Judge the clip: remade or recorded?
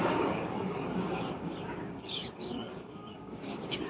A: remade